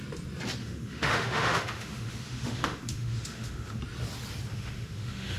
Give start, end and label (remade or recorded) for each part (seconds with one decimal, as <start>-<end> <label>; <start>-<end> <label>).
0.0-0.6 recorded; 0.6-3.8 remade; 3.8-4.5 recorded; 4.5-5.4 remade

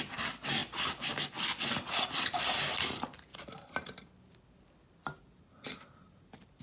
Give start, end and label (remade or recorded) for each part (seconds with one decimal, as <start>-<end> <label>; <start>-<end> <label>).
0.0-6.6 recorded